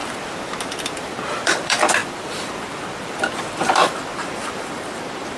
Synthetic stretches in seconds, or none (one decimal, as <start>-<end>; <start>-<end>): 0.8-5.4